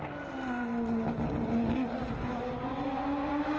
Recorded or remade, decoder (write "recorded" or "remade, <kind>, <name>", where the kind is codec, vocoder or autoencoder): recorded